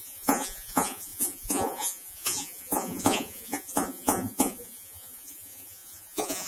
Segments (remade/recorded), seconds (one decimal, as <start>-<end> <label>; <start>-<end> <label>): 0.0-6.5 remade